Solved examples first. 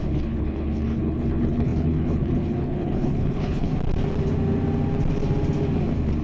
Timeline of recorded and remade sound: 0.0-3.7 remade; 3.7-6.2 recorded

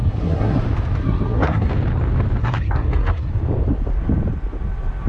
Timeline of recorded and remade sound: 0.0-0.6 remade; 0.6-1.0 recorded; 1.0-1.7 remade; 1.7-2.4 recorded; 2.4-3.3 remade; 3.3-5.1 recorded

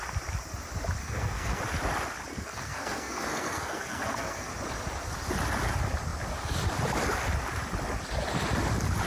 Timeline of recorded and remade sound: 0.0-1.0 recorded; 1.0-1.6 remade; 1.6-2.3 recorded; 2.3-4.5 remade; 4.5-9.1 recorded

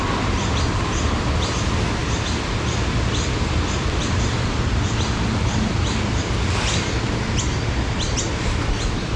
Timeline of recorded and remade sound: 0.0-9.2 recorded

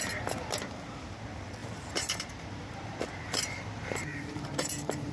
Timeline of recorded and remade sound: 0.0-1.6 recorded; 1.6-5.1 remade